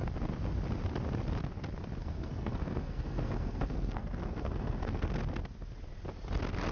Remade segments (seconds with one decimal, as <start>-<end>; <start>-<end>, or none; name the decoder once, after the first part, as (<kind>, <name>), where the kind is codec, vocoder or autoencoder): 2.0-5.1 (codec, SNAC)